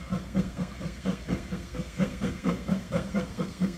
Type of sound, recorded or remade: remade